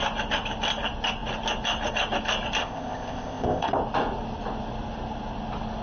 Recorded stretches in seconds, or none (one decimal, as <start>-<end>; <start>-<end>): 0.0-2.6; 3.7-5.8